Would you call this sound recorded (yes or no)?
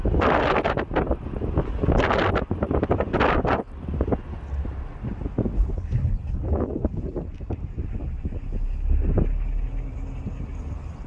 yes